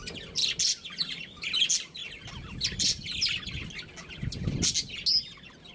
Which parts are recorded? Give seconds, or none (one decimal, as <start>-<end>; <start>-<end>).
0.0-5.7